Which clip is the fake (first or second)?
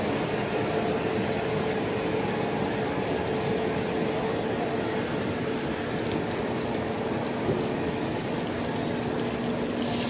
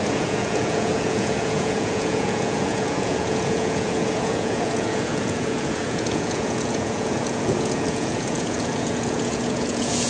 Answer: second